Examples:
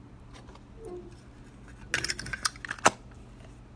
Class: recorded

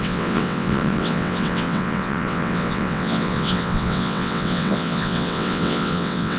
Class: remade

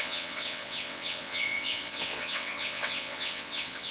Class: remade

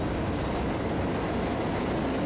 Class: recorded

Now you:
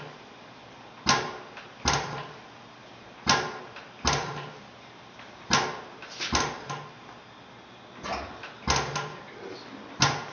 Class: recorded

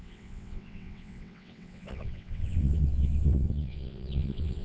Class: remade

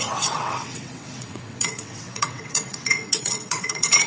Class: remade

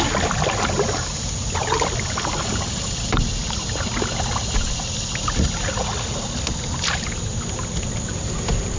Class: recorded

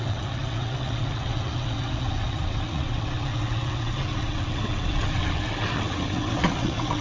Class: remade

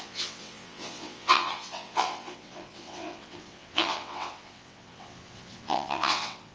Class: remade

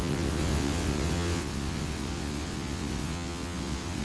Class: remade